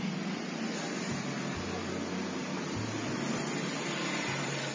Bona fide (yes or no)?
yes